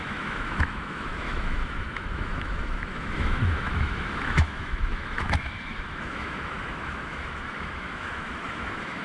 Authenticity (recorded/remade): remade